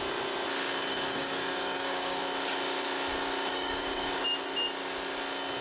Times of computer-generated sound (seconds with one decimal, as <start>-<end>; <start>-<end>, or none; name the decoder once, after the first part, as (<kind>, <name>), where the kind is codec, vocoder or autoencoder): 0.9-2.2 (codec, DAC); 3.5-4.1